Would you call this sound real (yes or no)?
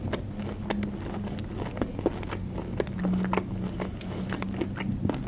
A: yes